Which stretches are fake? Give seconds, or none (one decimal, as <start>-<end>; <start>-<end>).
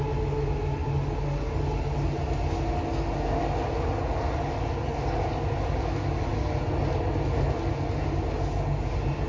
none